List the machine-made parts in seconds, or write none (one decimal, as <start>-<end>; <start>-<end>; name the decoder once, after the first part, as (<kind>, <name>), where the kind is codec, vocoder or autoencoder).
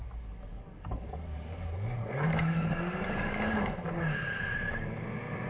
0.5-3.8 (codec, DAC)